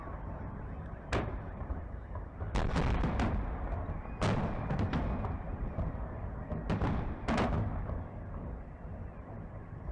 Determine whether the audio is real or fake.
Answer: real